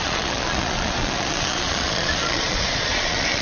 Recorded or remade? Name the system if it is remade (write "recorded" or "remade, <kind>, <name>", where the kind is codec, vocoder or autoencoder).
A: remade, vocoder, Vocos